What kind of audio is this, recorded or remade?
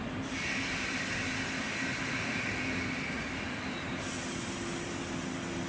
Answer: recorded